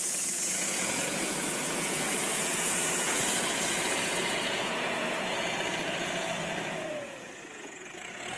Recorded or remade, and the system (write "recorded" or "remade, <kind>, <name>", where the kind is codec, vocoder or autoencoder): remade, vocoder, Vocos